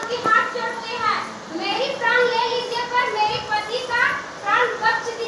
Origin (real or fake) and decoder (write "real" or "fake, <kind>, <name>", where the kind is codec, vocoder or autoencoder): real